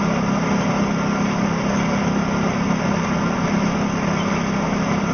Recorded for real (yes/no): yes